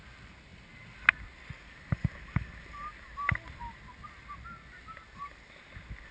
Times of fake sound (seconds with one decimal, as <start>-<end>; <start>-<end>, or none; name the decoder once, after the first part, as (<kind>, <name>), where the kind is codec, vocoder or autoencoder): none